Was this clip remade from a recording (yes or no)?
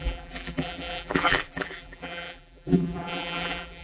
yes